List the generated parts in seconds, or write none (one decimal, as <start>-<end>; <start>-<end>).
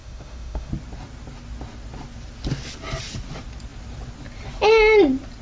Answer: 0.0-0.7